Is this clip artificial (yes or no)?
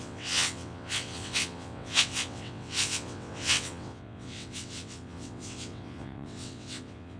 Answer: yes